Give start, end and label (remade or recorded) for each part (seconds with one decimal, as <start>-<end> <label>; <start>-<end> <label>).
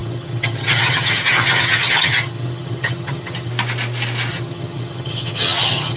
0.0-3.5 remade; 3.5-4.3 recorded; 4.3-6.0 remade